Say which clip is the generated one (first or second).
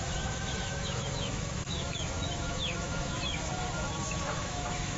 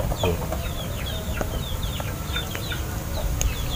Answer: first